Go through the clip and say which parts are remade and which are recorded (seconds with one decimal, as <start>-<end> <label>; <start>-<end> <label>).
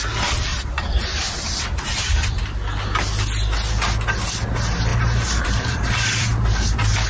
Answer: 0.0-0.5 recorded; 0.5-2.4 remade; 2.4-4.9 recorded; 4.9-7.1 remade